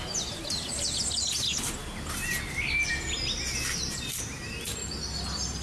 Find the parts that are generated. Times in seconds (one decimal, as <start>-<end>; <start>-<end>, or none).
none